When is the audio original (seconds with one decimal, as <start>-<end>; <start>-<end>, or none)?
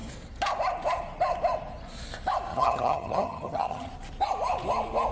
0.0-2.5; 3.9-5.1